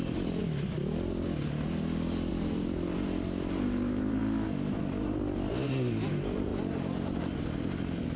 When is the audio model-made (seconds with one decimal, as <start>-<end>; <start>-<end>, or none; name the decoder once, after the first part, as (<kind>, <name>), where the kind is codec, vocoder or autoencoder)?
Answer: 0.0-0.4 (vocoder, BigVGAN v2); 2.3-4.2; 5.5-6.5; 7.2-8.2